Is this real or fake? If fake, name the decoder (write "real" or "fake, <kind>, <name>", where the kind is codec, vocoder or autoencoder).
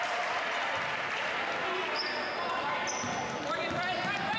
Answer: real